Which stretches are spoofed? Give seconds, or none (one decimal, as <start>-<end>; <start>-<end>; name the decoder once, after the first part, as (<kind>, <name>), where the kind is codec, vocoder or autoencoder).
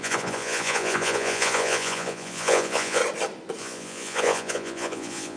0.0-3.0 (vocoder, Vocos); 3.6-5.4